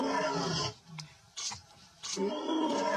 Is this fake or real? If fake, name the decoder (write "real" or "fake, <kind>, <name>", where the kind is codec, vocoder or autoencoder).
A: real